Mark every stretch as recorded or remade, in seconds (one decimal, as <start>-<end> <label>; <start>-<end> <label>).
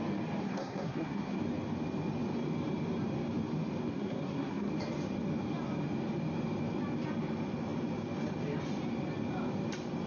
0.0-0.4 recorded; 0.4-1.4 remade; 1.4-3.9 recorded; 3.9-4.7 remade; 4.7-10.1 recorded